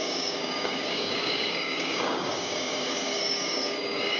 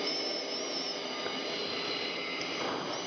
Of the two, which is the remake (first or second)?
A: first